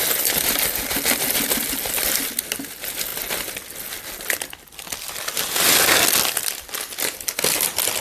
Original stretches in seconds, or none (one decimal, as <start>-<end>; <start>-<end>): 0.0-8.0